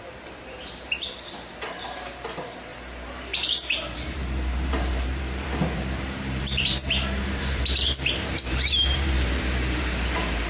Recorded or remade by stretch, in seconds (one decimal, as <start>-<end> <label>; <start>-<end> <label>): 0.0-10.5 remade